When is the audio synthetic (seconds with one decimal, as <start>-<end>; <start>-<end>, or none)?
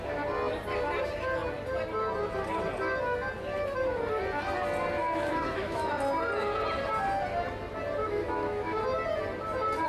5.0-5.9; 8.0-8.8